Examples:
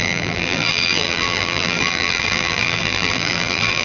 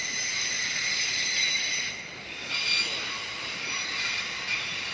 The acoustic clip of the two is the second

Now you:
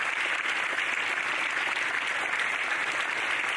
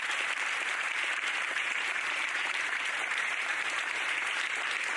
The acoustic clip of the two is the first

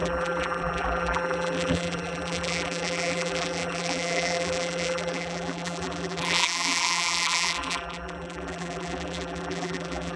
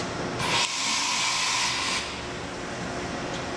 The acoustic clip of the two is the second